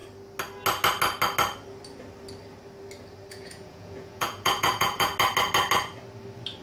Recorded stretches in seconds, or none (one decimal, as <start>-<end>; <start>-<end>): 0.0-3.3; 5.1-6.6